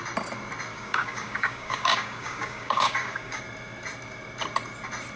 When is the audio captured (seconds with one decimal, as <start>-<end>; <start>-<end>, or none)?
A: 0.0-0.7; 3.4-5.2